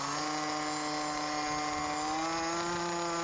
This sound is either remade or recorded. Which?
recorded